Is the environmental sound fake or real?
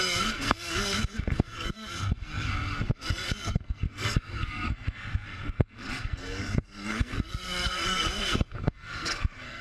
fake